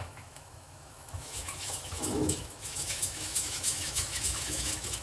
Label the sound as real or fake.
fake